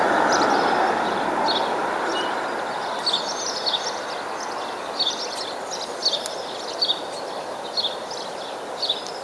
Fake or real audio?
real